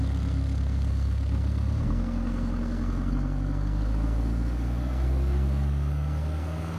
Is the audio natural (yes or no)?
no